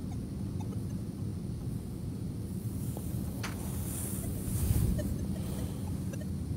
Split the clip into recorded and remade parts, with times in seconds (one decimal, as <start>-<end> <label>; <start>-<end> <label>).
0.0-4.3 recorded; 4.3-5.1 remade; 5.1-6.6 recorded